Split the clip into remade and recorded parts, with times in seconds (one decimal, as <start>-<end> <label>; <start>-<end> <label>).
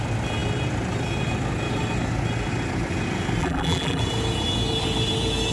0.0-3.4 recorded; 3.4-4.0 remade; 4.0-5.5 recorded